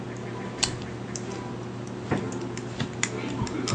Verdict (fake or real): real